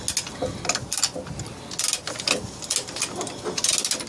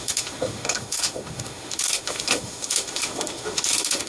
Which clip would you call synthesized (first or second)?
second